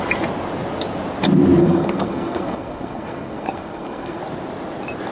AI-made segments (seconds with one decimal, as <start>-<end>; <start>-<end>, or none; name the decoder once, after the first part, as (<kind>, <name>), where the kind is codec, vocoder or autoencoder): 1.6-4.2 (codec, SNAC)